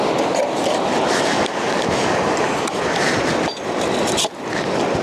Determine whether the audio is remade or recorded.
recorded